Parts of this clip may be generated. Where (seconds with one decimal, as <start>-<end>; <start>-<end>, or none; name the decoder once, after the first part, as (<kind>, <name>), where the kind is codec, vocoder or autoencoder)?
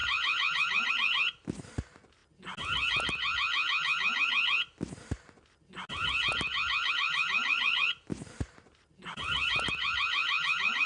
0.0-2.2 (vocoder, BigVGAN v2); 6.9-10.9